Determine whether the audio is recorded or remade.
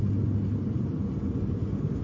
recorded